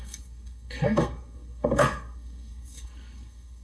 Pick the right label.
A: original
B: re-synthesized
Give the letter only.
B